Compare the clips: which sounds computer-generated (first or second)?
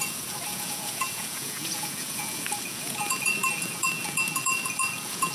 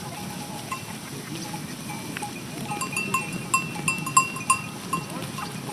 first